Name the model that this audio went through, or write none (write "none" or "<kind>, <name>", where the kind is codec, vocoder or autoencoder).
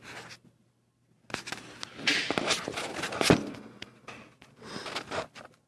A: none